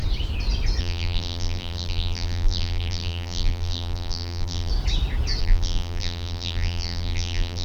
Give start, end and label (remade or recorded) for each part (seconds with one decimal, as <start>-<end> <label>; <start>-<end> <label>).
0.0-0.8 recorded; 0.8-4.7 remade; 4.7-5.4 recorded; 5.4-7.6 remade